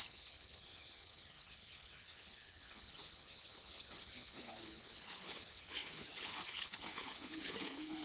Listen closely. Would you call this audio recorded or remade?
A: remade